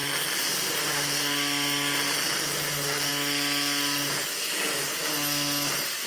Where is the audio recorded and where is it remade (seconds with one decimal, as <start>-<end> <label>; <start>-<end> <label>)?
0.0-6.1 recorded